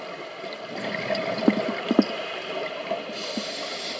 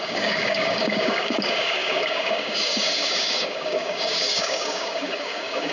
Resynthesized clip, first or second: second